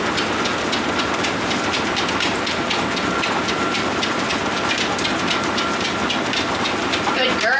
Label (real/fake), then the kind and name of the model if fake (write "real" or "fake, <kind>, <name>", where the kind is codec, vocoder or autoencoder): real